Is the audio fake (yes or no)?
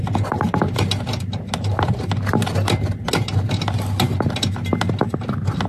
no